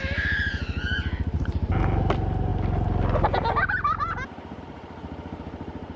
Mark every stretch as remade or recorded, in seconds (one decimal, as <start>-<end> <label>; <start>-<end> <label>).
0.0-6.0 recorded